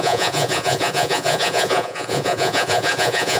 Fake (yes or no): yes